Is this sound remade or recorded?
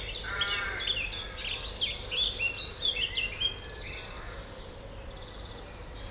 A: recorded